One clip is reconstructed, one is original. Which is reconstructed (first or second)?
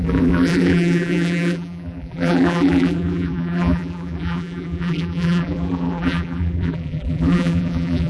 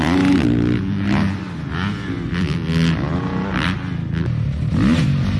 first